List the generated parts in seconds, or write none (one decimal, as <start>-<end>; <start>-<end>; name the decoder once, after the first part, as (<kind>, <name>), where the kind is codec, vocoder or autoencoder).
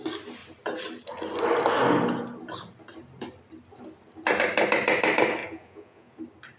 5.4-6.1 (vocoder, Vocos)